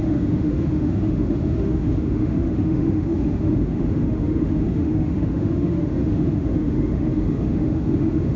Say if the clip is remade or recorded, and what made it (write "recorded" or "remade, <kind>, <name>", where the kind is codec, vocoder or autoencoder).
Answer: remade, autoencoder, DAC-VAE